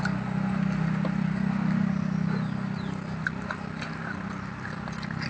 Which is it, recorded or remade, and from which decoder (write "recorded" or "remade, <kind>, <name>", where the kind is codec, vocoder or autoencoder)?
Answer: recorded